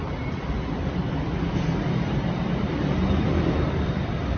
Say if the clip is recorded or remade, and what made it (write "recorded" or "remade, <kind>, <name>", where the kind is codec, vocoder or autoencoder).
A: remade, vocoder, BigVGAN v2